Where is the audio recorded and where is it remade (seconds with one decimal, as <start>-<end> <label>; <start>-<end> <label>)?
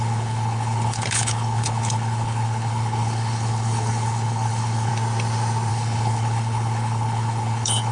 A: 0.0-4.9 remade; 4.9-5.7 recorded; 5.7-7.9 remade